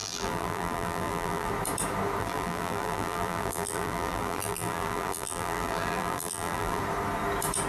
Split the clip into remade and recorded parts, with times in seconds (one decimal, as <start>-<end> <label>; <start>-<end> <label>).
0.0-1.5 remade; 1.5-2.2 recorded; 2.2-6.8 remade; 6.8-7.7 recorded